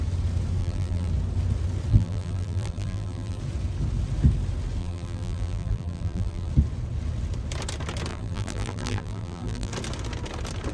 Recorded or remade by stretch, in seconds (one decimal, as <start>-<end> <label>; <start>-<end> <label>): 0.0-0.6 recorded; 0.6-1.1 remade; 1.1-1.9 recorded; 1.9-3.4 remade; 3.4-4.8 recorded; 4.8-6.5 remade; 6.5-8.1 recorded; 8.1-9.7 remade; 9.7-10.7 recorded

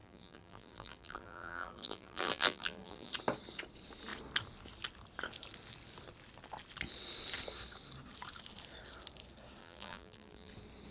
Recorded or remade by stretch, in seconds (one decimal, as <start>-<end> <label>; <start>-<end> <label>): 0.0-3.1 remade; 3.1-9.6 recorded; 9.6-10.5 remade; 10.5-10.9 recorded

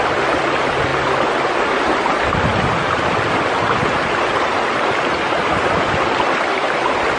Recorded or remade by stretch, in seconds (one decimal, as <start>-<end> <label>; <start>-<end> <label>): 0.0-2.5 remade; 2.5-4.3 recorded; 4.3-7.2 remade

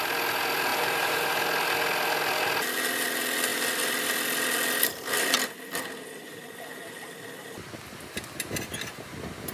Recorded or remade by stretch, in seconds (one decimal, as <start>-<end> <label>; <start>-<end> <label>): 0.0-0.7 recorded; 0.7-1.3 remade; 1.3-9.5 recorded

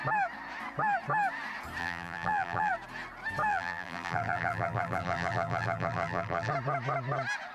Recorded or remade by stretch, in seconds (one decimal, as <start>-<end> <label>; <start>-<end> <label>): 0.0-1.8 recorded; 1.8-2.7 remade; 2.7-3.5 recorded; 3.5-6.5 remade; 6.5-7.5 recorded